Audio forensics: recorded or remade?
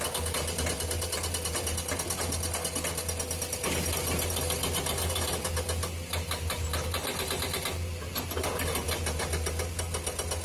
recorded